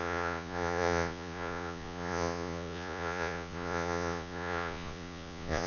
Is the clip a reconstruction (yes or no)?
yes